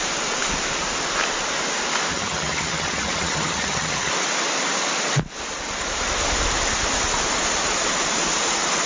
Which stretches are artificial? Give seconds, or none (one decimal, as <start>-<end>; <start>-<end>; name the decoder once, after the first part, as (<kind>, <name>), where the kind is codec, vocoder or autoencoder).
2.1-4.1 (vocoder, HiFi-GAN)